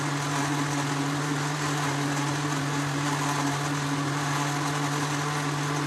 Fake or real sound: real